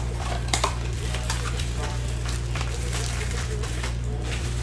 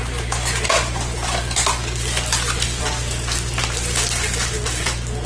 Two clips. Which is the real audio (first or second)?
second